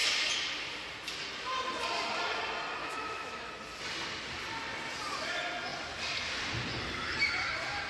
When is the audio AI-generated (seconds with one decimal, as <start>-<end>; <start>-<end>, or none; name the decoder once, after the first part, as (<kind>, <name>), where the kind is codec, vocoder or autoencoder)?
2.8-3.5 (autoencoder, DAC-VAE)